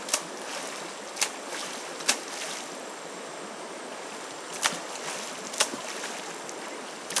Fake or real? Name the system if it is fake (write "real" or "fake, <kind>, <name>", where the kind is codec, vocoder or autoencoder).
real